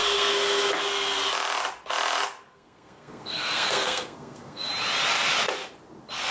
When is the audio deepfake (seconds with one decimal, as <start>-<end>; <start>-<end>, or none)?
0.0-0.7; 2.5-4.7